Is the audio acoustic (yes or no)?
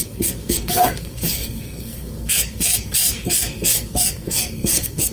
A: no